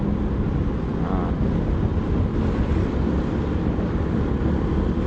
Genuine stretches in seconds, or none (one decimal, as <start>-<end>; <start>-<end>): 0.0-5.1